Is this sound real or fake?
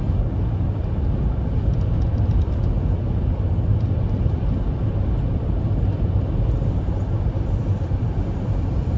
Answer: fake